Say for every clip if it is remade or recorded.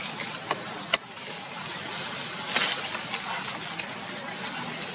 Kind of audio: recorded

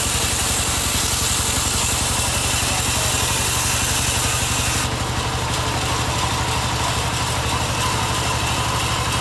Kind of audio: recorded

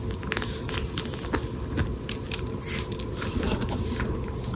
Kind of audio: recorded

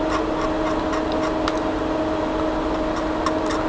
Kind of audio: recorded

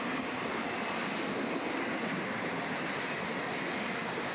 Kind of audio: recorded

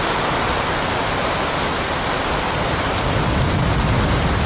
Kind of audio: recorded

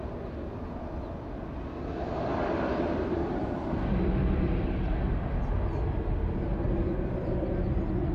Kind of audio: recorded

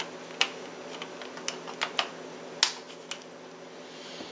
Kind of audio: recorded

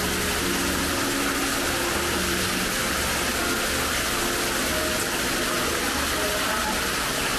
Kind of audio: recorded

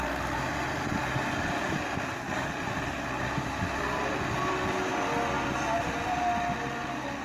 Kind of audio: recorded